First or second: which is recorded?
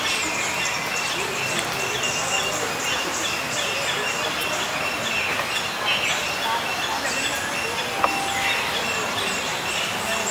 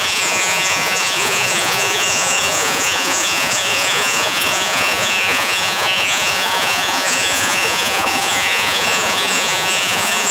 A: first